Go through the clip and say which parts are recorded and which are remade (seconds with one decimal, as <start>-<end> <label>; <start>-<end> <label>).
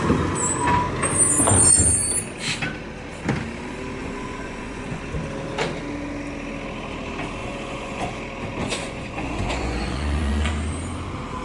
0.0-4.0 recorded; 4.0-5.0 remade; 5.0-7.4 recorded; 7.4-8.1 remade; 8.1-8.6 recorded; 8.6-10.5 remade; 10.5-11.4 recorded